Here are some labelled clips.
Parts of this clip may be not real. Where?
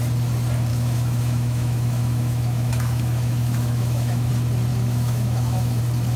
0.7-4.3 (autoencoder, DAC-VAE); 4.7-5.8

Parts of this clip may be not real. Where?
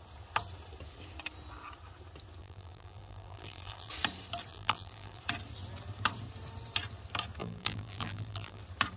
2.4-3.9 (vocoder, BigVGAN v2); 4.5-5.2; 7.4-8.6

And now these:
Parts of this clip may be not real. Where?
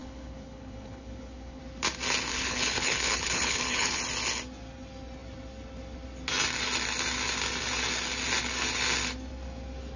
0.0-1.6 (codec, HILCodec); 2.3-4.0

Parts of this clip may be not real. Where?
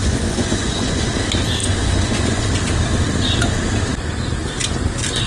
0.0-1.1 (vocoder, Vocos); 1.6-2.4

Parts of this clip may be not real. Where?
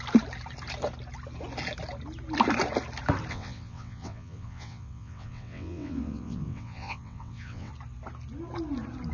3.3-7.7 (vocoder, WaveNeXt)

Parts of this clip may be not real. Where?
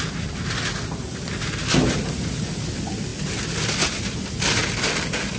none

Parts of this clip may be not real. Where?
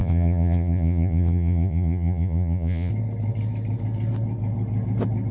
0.0-2.9 (vocoder, Vocos)